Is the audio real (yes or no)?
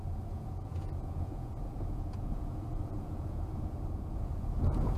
no